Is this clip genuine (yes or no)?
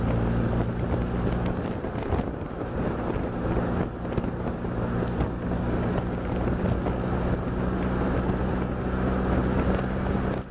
yes